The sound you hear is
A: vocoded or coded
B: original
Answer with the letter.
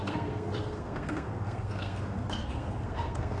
A